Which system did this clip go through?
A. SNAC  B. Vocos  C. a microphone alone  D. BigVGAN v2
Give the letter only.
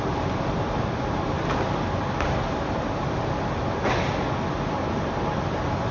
C